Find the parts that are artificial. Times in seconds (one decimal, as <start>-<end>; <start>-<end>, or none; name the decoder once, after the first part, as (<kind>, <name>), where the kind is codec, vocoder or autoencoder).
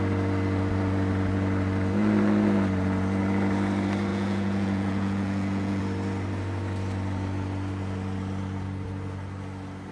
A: 4.1-5.8 (vocoder, Vocos)